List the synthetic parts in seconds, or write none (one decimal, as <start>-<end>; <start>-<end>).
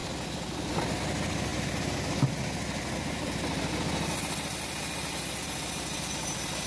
none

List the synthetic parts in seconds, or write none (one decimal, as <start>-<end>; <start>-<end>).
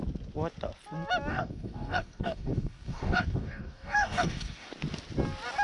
1.3-4.7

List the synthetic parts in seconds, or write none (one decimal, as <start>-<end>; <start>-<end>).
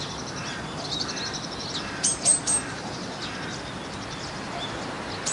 none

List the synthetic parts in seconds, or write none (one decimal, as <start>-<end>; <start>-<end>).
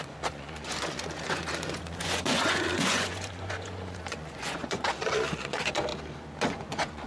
0.0-5.9; 6.5-7.1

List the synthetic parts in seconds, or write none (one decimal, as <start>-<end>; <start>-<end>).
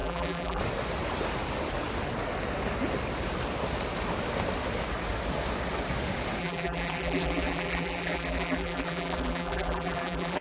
0.0-0.6; 6.4-10.4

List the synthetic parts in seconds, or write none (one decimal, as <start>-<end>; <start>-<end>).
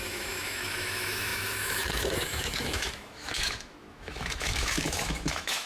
0.0-5.7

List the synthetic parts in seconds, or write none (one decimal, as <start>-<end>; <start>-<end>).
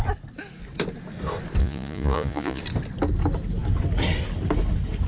1.6-2.6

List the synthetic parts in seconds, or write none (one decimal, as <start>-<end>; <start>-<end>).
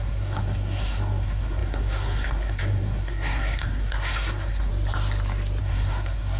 0.0-4.7; 5.6-6.4